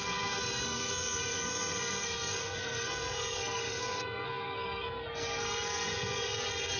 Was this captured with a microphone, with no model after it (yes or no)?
no